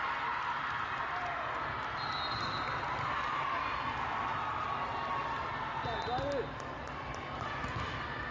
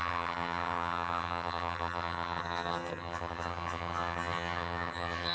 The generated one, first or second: second